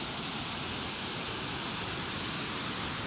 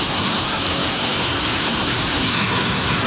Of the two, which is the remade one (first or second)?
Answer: second